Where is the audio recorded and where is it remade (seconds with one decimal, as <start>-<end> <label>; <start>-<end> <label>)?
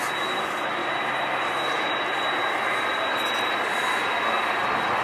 0.0-5.0 recorded